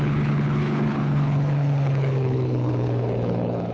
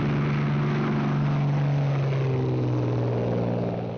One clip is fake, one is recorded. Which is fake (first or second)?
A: first